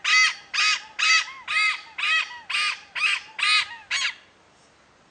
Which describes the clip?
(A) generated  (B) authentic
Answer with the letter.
B